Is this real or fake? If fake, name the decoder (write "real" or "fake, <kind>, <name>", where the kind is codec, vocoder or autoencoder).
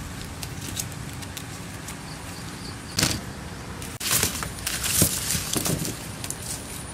real